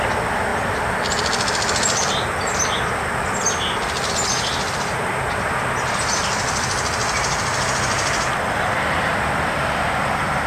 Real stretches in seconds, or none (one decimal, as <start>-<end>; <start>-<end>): 0.0-10.5